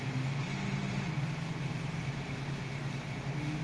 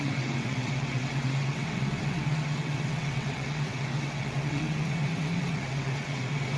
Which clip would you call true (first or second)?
first